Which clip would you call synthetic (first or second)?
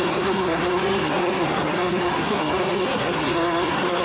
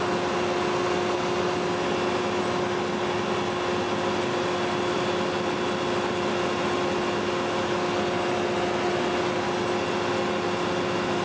first